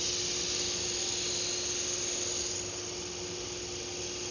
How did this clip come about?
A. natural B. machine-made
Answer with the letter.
A